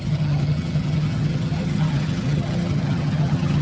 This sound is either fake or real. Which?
fake